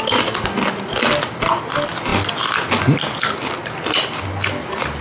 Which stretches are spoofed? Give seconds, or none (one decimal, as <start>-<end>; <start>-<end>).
none